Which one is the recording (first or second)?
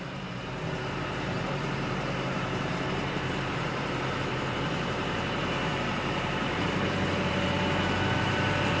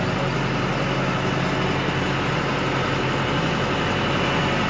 second